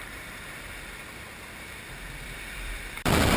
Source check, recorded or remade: remade